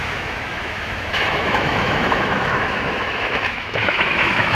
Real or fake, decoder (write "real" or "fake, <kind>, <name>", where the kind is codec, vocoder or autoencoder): fake, autoencoder, DAC-VAE